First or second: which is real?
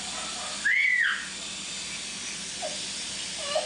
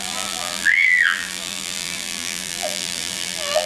first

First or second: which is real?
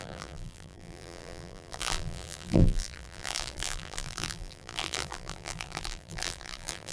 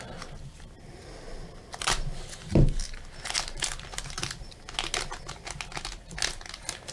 second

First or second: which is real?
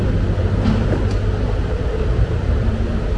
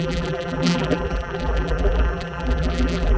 first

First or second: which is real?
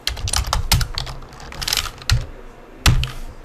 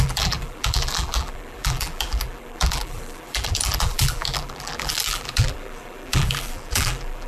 first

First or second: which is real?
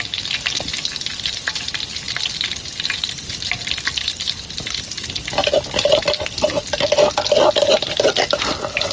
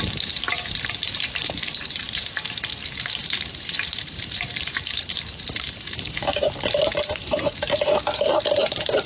first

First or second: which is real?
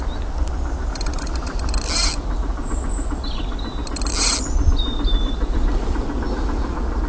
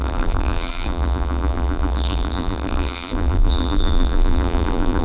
first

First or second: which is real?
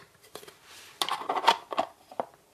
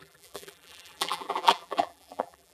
first